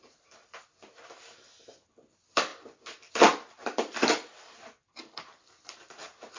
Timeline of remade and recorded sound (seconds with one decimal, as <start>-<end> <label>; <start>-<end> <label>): 0.0-2.5 remade; 2.5-3.1 recorded; 3.1-6.4 remade